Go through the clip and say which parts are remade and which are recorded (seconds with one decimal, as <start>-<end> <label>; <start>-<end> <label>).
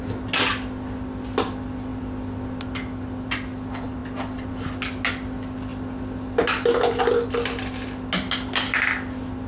0.0-9.5 recorded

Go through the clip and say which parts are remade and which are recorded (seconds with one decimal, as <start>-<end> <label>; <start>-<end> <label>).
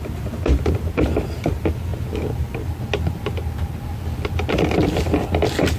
0.0-5.8 recorded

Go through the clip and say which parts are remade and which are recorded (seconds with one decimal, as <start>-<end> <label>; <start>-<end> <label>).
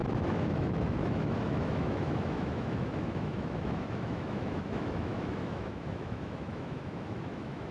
0.0-7.7 remade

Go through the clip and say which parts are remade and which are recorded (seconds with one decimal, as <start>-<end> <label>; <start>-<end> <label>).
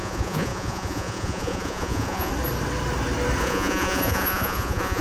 0.0-2.3 remade; 2.3-3.4 recorded; 3.4-5.0 remade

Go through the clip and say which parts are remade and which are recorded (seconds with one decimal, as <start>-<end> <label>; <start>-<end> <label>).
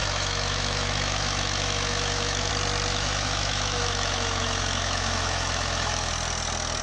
0.0-2.5 remade; 2.5-2.9 recorded; 2.9-6.1 remade; 6.1-6.8 recorded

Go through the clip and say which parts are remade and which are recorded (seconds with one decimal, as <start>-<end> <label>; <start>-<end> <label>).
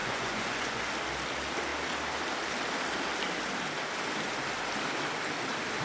0.0-0.8 remade; 0.8-5.8 recorded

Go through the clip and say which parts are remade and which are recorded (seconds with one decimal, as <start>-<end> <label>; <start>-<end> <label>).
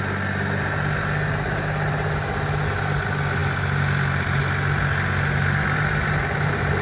0.0-6.8 recorded